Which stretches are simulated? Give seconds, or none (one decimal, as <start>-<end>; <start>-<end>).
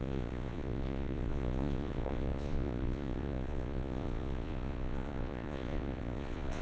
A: 0.0-6.6